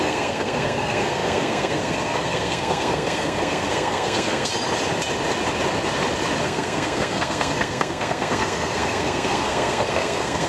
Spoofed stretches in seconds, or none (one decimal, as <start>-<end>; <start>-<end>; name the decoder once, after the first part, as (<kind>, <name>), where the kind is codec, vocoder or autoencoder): 0.0-4.5 (codec, SNAC); 6.4-10.5